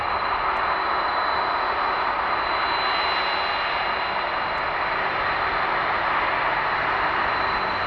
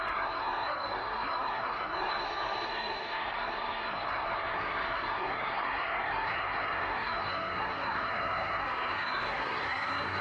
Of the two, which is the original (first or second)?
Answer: first